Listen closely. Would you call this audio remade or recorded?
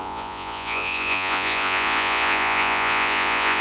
remade